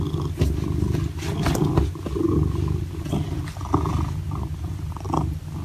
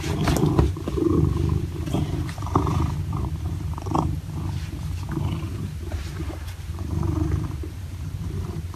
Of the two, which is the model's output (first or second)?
second